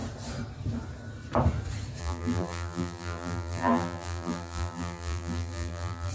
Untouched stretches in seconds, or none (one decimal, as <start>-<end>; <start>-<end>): 0.0-2.0